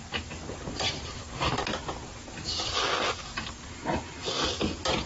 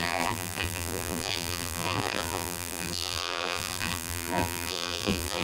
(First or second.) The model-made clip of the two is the second